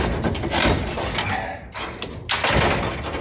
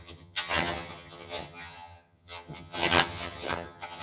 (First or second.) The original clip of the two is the first